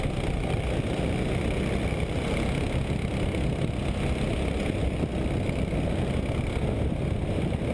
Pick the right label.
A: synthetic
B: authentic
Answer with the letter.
B